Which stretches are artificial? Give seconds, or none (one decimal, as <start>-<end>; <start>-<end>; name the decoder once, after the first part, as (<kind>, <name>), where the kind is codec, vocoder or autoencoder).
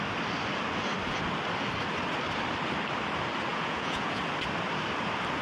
3.5-4.2 (vocoder, Vocos)